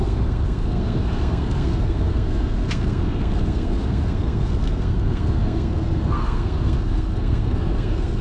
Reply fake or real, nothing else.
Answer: fake